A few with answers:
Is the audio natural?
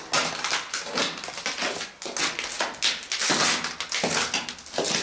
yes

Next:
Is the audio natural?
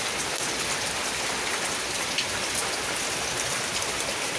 yes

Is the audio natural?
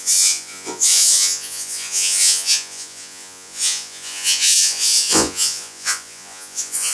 no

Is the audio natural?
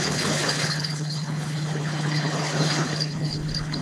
no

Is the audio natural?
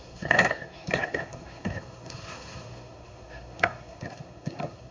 no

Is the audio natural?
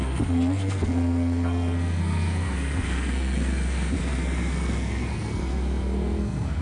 no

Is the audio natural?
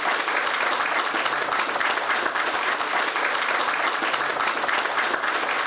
yes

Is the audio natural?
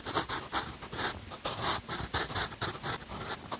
yes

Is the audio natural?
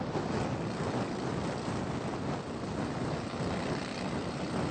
yes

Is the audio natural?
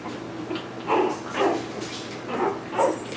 yes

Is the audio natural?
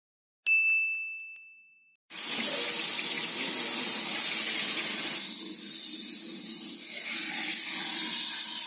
yes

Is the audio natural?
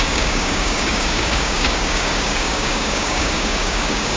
no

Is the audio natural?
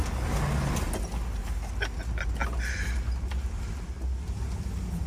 yes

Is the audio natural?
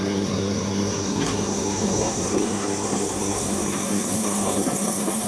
no